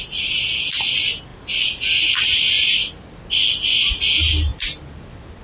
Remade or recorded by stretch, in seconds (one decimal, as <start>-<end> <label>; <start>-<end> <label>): 0.0-5.4 recorded